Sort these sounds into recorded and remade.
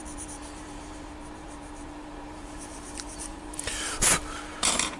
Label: remade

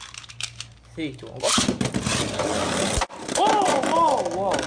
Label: recorded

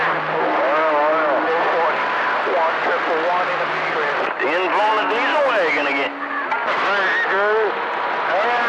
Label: recorded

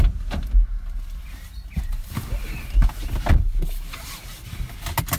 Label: recorded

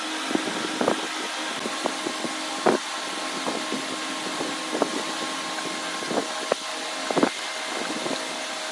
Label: recorded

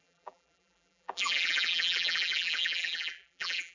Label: remade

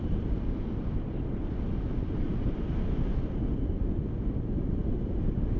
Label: recorded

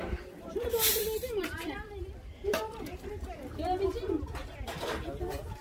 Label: remade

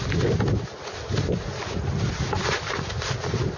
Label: recorded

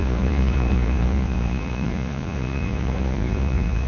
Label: remade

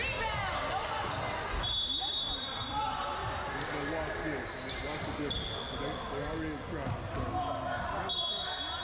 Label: recorded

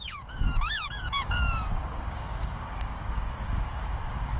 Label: remade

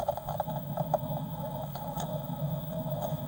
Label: remade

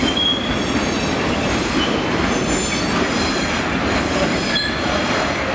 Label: recorded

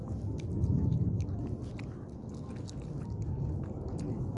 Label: recorded